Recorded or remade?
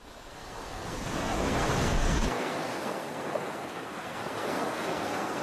remade